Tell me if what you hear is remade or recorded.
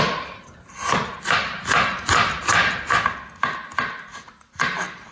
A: recorded